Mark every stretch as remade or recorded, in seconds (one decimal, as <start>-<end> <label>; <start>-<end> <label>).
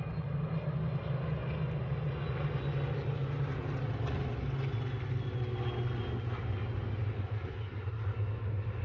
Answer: 0.0-8.8 recorded